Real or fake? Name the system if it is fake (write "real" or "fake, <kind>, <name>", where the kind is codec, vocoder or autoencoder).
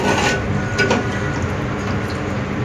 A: real